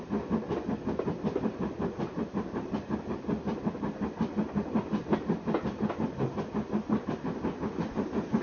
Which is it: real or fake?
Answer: real